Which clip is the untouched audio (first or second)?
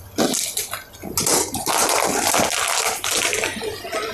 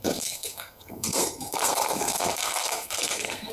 first